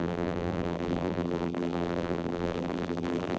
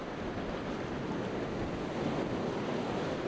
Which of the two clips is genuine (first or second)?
second